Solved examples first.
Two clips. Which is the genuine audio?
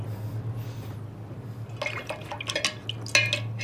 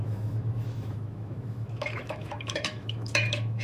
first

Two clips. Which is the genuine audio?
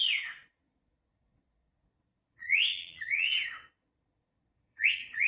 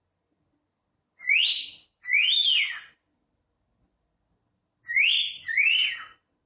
second